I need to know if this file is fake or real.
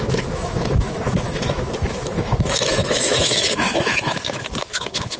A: fake